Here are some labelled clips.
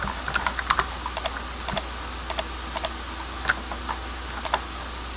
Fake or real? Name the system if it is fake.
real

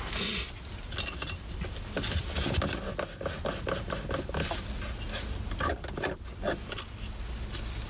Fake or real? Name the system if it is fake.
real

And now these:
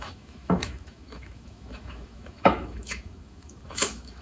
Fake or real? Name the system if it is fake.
fake, autoencoder, DAC-VAE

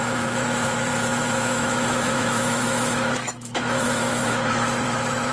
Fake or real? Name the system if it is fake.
fake, autoencoder, DAC-VAE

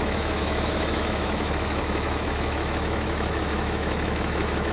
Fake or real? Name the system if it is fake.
fake, autoencoder, DAC-VAE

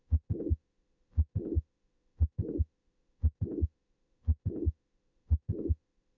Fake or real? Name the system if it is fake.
fake, autoencoder, DAC-VAE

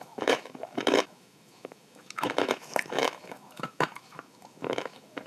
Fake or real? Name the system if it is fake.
fake, autoencoder, DAC-VAE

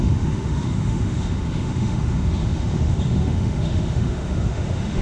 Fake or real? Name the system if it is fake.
fake, autoencoder, DAC-VAE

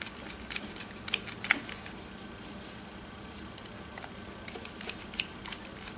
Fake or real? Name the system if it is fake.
real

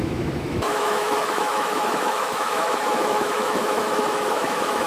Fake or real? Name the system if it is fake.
fake, autoencoder, DAC-VAE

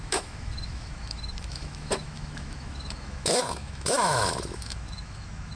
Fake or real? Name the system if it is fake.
fake, autoencoder, DAC-VAE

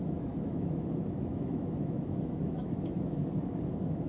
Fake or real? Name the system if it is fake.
fake, autoencoder, DAC-VAE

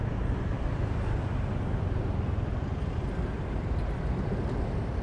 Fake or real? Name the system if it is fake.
real